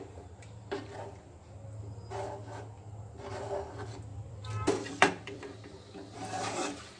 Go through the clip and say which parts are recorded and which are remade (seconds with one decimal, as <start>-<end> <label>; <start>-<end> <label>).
0.0-4.1 recorded; 4.1-7.0 remade